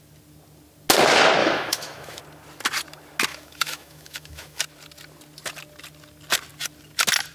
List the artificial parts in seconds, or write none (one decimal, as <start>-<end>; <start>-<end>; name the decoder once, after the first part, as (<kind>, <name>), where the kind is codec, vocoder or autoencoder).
1.4-2.2 (autoencoder, DAC-VAE); 3.3-4.6